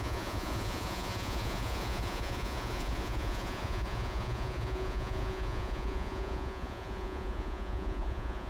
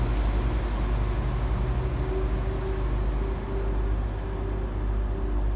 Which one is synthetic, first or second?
first